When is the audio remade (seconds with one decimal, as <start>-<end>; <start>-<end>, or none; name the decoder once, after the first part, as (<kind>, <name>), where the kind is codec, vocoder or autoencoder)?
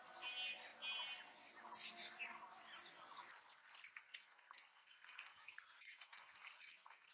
4.0-7.1 (codec, SNAC)